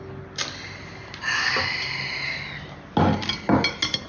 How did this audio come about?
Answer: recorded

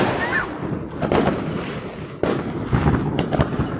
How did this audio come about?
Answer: recorded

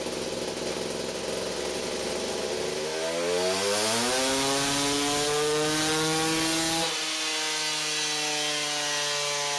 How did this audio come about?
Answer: recorded